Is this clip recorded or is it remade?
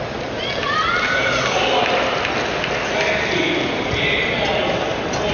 recorded